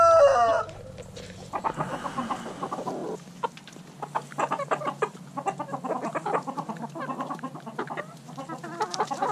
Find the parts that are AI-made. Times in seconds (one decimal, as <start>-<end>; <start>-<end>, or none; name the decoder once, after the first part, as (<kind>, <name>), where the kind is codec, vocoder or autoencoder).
none